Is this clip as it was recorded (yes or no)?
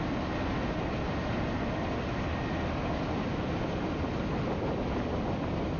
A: yes